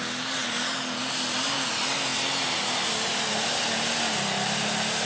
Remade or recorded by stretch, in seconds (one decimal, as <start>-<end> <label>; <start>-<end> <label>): 0.0-5.1 recorded